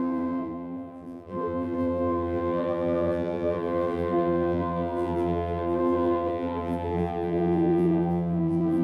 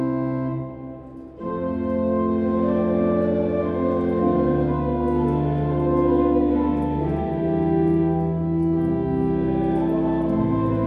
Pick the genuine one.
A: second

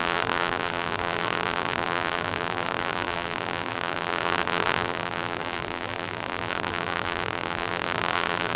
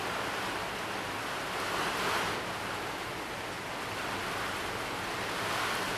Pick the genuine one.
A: second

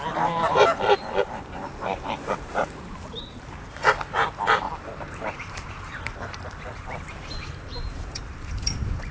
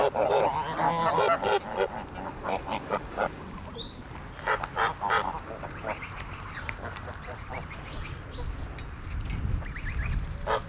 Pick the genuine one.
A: second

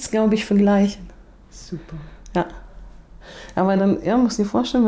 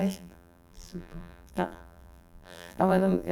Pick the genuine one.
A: first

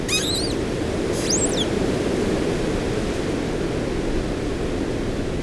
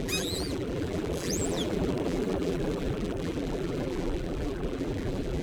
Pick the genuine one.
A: first